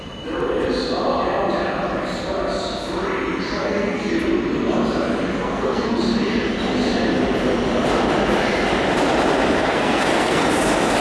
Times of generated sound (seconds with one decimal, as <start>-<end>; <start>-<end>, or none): 3.6-4.1; 5.4-6.0; 9.6-10.5